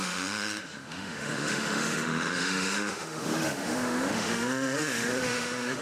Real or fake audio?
fake